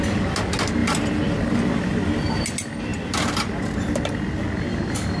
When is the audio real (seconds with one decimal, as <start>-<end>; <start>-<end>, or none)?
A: 0.0-0.8; 2.4-2.9; 3.6-5.2